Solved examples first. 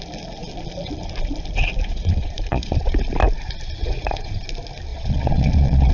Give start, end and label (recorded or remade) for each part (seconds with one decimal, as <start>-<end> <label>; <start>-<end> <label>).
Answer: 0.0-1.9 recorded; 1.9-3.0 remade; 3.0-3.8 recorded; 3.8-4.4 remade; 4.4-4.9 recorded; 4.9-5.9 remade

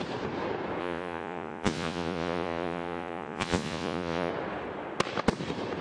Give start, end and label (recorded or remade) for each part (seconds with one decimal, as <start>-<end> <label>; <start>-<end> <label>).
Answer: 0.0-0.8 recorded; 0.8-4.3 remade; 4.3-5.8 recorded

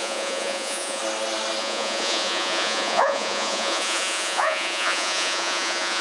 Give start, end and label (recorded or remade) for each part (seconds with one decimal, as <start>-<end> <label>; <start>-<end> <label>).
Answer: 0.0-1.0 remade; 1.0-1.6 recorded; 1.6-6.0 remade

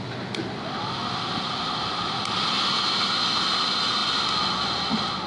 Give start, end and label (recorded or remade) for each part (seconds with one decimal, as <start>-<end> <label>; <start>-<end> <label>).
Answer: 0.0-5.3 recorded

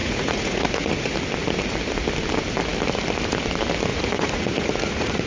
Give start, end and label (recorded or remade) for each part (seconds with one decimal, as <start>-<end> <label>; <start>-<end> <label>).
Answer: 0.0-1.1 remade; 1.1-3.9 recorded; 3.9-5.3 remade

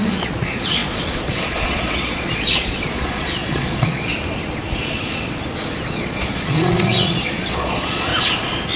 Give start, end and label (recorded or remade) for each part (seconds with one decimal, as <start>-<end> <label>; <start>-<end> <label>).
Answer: 0.0-4.1 remade; 4.1-5.9 recorded; 5.9-8.1 remade; 8.1-8.8 recorded

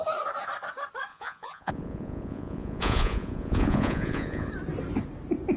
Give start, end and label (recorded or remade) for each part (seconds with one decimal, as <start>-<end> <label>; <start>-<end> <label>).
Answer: 0.0-1.1 recorded; 1.1-4.5 remade; 4.5-5.6 recorded